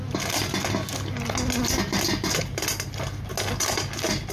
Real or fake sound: real